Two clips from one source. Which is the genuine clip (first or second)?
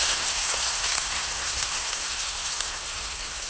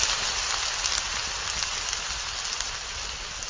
second